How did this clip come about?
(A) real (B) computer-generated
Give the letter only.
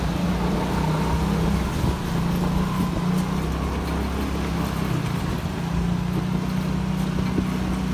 A